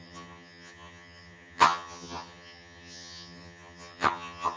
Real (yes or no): no